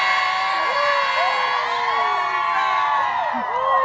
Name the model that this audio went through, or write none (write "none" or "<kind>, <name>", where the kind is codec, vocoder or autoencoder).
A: none